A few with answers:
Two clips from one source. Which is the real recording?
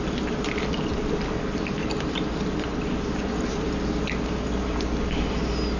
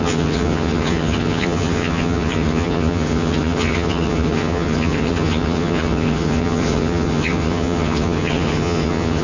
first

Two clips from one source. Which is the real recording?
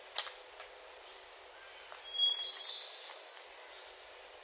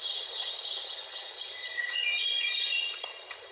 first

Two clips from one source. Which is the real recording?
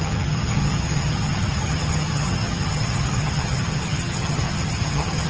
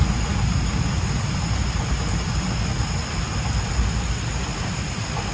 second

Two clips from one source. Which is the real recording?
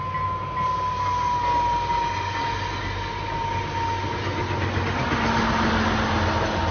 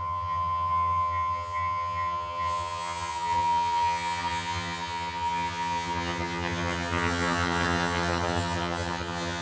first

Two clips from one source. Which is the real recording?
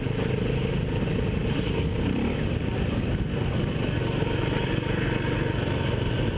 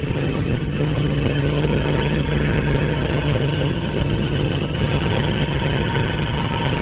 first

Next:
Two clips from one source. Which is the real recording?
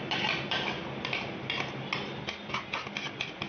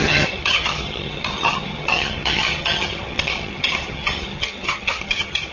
first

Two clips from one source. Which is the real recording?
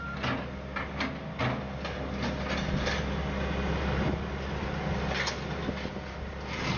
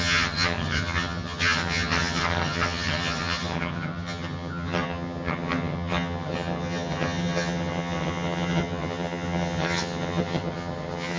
first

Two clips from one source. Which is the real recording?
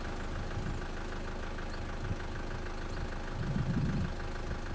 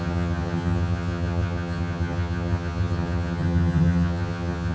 first